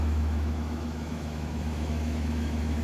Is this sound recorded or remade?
remade